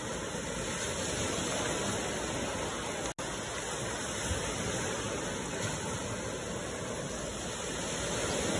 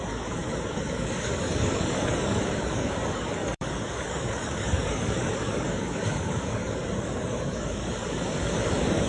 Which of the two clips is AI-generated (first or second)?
second